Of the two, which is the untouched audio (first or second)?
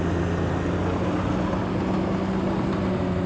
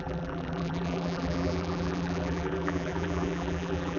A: first